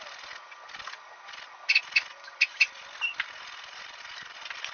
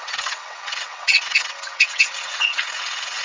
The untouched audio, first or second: first